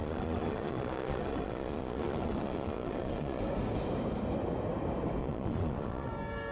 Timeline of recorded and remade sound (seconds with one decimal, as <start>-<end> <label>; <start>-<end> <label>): 0.0-3.4 remade; 3.4-5.2 recorded; 5.2-6.1 remade; 6.1-6.5 recorded